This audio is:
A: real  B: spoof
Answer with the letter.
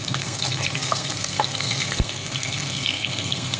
B